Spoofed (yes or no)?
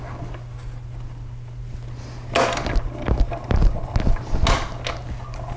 no